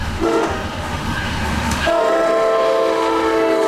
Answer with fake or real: fake